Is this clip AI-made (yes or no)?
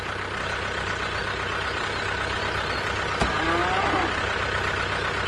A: no